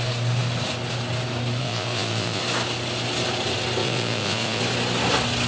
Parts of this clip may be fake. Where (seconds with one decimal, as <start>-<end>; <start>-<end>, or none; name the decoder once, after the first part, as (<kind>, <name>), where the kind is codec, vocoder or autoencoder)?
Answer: 1.6-2.4 (vocoder, Vocos); 3.8-4.6